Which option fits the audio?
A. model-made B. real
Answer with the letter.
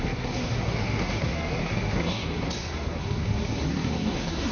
A